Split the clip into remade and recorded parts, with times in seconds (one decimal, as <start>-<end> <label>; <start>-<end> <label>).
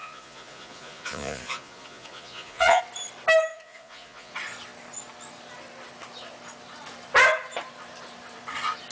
0.0-2.8 remade; 2.8-3.5 recorded; 3.5-4.3 remade; 4.3-8.9 recorded